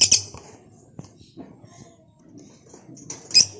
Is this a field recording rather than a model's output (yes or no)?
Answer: yes